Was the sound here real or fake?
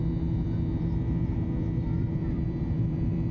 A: fake